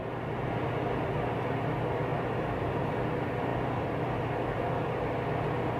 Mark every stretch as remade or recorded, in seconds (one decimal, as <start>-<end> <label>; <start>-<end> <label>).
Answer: 0.0-2.1 recorded; 2.1-2.9 remade; 2.9-3.5 recorded; 3.5-5.2 remade; 5.2-5.8 recorded